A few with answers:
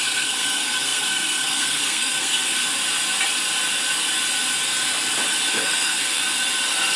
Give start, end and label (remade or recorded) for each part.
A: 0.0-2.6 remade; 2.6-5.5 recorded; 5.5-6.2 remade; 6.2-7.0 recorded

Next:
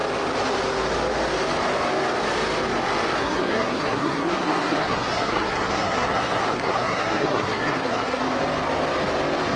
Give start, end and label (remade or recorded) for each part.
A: 0.0-3.2 recorded; 3.2-8.2 remade; 8.2-9.6 recorded